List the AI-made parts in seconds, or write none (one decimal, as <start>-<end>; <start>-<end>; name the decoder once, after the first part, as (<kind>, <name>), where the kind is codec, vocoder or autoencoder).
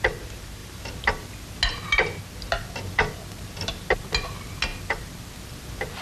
none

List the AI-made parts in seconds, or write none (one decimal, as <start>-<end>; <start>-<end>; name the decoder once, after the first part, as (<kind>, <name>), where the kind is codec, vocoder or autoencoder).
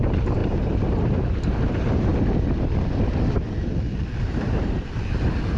0.0-2.1 (vocoder, BigVGAN v2); 4.2-5.6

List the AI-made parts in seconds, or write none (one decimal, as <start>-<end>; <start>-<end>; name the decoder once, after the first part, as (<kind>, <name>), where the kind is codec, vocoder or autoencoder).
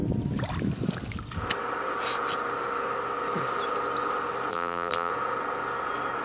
4.5-5.1 (vocoder, BigVGAN v2)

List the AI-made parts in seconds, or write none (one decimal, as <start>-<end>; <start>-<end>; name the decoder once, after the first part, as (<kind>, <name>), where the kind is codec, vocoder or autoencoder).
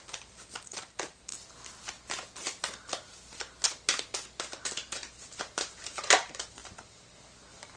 0.0-1.3 (vocoder, BigVGAN v2); 5.3-7.8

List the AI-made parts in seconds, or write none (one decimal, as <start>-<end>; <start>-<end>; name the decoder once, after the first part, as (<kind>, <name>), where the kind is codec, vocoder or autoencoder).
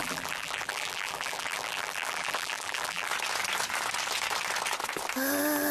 0.0-3.1 (vocoder, BigVGAN v2)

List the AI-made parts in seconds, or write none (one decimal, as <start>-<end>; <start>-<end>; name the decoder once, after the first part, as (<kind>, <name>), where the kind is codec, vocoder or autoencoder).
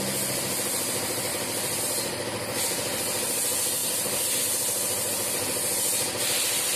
1.3-1.8 (vocoder, BigVGAN v2); 3.8-4.4